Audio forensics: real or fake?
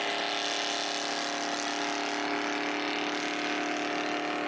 real